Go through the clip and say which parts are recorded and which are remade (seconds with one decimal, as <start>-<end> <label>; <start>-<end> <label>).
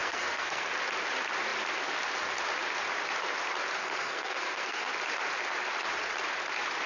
0.0-0.7 remade; 0.7-3.8 recorded; 3.8-4.8 remade; 4.8-6.9 recorded